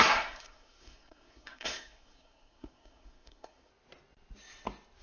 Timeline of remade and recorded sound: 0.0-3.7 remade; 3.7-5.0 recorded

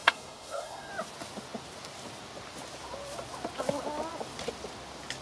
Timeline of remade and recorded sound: 0.0-0.9 remade; 0.9-5.2 recorded

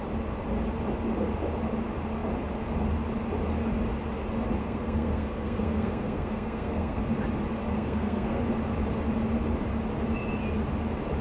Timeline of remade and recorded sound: 0.0-4.6 recorded; 4.6-7.0 remade; 7.0-7.7 recorded; 7.7-8.4 remade; 8.4-11.2 recorded

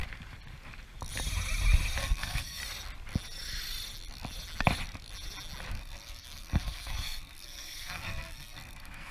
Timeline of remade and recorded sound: 0.0-2.0 recorded; 2.0-2.6 remade; 2.6-5.7 recorded; 5.7-9.1 remade

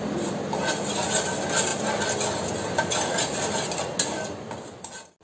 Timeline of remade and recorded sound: 0.0-5.2 recorded

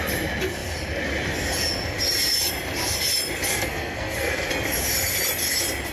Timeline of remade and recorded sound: 0.0-3.5 recorded; 3.5-4.5 remade; 4.5-5.9 recorded

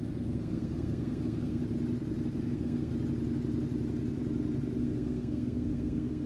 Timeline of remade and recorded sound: 0.0-1.6 remade; 1.6-2.4 recorded; 2.4-2.9 remade; 2.9-4.8 recorded; 4.8-6.3 remade